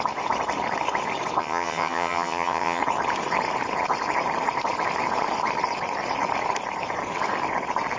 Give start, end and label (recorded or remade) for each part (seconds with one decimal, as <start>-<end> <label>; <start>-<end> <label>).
0.0-1.4 recorded; 1.4-2.8 remade; 2.8-8.0 recorded